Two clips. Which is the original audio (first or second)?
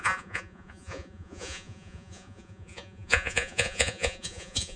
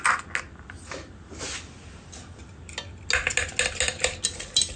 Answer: second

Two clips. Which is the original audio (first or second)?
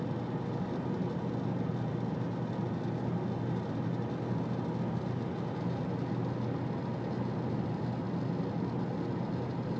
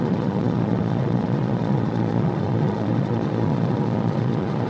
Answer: first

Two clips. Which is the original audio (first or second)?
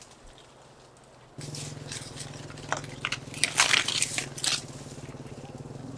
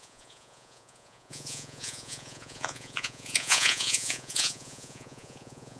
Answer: first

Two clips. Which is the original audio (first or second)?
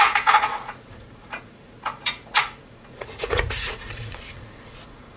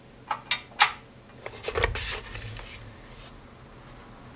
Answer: second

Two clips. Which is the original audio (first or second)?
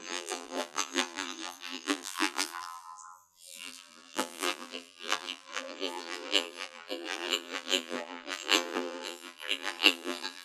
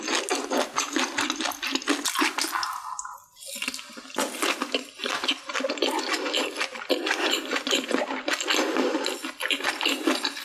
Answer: second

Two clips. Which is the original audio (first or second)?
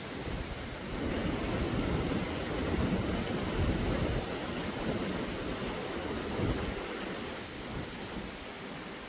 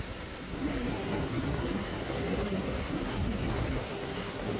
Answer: first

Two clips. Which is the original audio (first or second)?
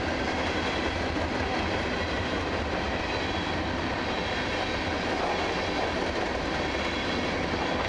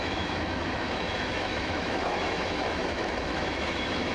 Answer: first